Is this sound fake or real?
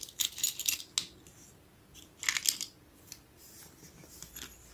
real